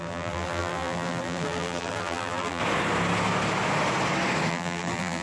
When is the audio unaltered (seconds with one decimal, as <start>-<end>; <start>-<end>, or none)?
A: 2.6-4.5